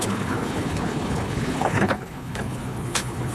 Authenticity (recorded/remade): remade